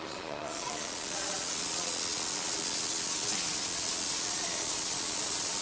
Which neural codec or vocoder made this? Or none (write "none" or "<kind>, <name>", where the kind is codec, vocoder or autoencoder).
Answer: vocoder, Vocos